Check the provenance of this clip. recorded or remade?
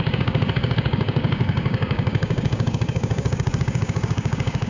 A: remade